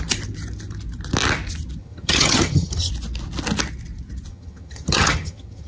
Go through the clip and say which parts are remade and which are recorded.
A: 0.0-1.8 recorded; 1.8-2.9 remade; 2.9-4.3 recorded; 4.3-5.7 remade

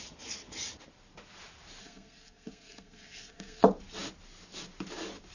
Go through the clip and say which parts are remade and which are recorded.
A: 0.0-1.8 recorded; 1.8-3.6 remade; 3.6-5.3 recorded

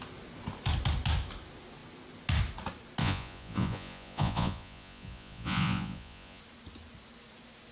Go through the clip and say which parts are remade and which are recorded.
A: 0.0-3.0 recorded; 3.0-6.4 remade; 6.4-7.7 recorded

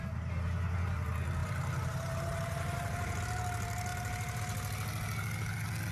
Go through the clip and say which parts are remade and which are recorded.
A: 0.0-1.4 recorded; 1.4-3.2 remade; 3.2-3.9 recorded; 3.9-4.4 remade; 4.4-5.9 recorded

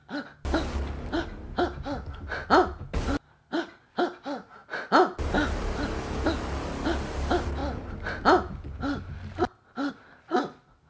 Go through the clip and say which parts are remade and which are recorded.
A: 0.0-10.9 recorded

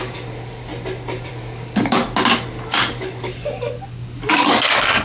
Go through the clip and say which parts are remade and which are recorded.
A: 0.0-0.7 remade; 0.7-1.3 recorded; 1.3-2.0 remade; 2.0-2.9 recorded; 2.9-5.0 remade